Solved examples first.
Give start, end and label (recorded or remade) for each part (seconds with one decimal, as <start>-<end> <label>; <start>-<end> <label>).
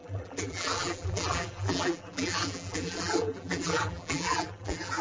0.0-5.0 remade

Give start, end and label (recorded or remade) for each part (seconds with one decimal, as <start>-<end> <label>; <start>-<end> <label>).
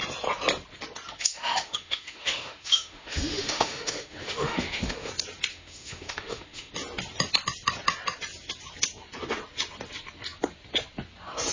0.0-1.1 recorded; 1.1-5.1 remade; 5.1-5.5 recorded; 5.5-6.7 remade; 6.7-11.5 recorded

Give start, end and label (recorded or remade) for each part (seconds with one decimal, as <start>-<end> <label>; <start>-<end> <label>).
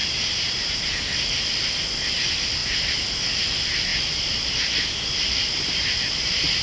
0.0-0.9 remade; 0.9-6.6 recorded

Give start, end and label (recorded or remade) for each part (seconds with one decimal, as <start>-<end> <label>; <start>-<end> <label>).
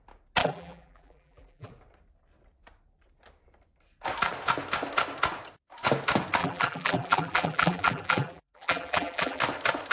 0.0-0.4 recorded; 0.4-1.7 remade; 1.7-6.4 recorded; 6.4-9.4 remade; 9.4-9.9 recorded